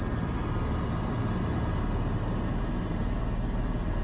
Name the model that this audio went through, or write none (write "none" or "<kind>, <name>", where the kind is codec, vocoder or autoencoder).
none